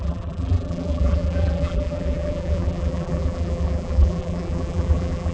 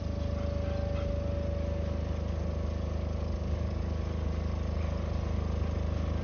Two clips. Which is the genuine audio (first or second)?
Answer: second